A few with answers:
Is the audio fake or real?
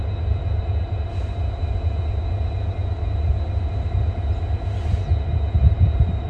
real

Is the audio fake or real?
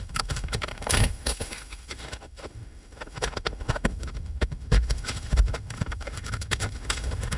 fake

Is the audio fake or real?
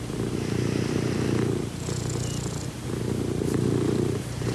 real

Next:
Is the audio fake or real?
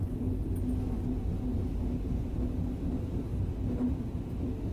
real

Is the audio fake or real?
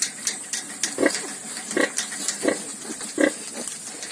real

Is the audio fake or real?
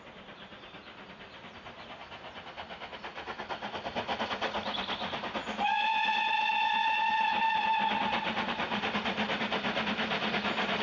real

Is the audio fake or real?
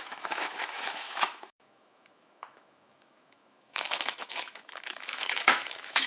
fake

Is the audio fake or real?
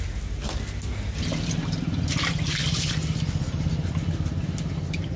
real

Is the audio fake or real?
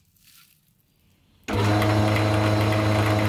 real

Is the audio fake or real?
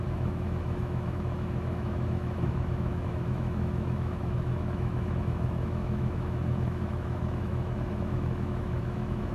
fake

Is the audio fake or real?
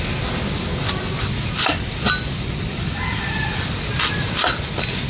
real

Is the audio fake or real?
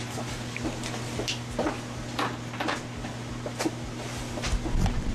real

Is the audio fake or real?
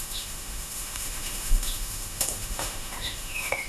fake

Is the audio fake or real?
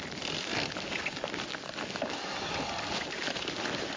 real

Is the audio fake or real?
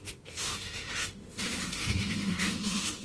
fake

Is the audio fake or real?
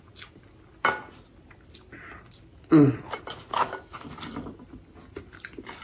real